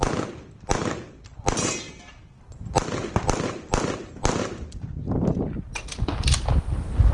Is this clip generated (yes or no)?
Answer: no